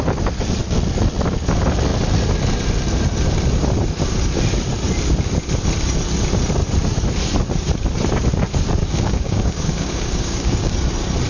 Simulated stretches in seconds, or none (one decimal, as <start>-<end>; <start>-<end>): 8.8-10.7